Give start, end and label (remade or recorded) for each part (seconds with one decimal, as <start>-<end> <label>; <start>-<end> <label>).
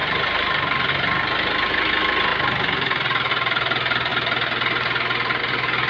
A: 0.0-0.9 remade; 0.9-2.3 recorded; 2.3-3.3 remade; 3.3-5.9 recorded